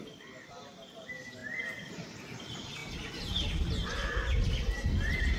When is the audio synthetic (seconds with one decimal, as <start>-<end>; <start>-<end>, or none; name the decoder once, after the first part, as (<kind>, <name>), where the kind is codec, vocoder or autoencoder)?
1.4-2.2 (vocoder, BigVGAN v2)